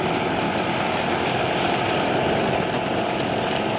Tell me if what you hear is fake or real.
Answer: real